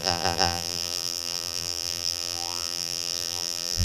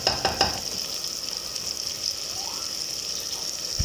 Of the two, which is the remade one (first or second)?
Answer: first